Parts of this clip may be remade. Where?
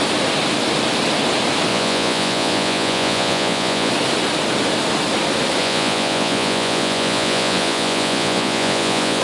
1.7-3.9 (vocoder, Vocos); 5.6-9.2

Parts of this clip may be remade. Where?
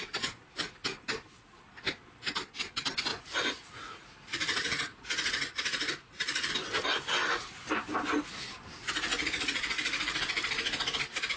3.1-6.5 (vocoder, Vocos); 9.1-10.2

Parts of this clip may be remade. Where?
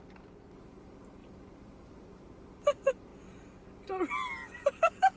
none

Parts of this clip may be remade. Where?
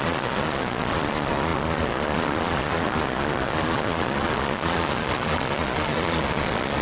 0.0-6.8 (vocoder, Vocos)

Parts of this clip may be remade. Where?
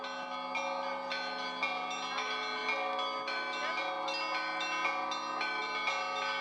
none